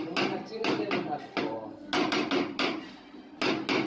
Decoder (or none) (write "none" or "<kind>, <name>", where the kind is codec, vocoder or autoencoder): none